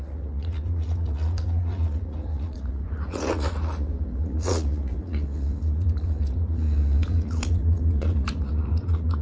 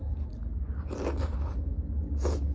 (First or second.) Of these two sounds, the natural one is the second